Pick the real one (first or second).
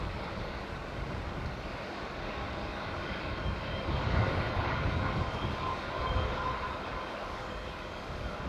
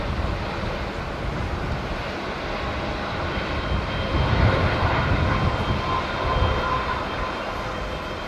second